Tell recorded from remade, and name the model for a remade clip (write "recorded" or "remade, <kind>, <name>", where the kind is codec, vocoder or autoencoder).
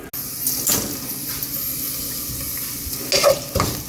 recorded